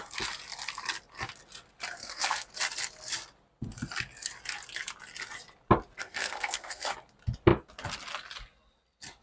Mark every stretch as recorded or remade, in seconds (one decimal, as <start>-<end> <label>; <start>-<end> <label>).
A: 0.0-2.0 recorded; 2.0-2.5 remade; 2.5-6.0 recorded; 6.0-6.9 remade; 6.9-9.2 recorded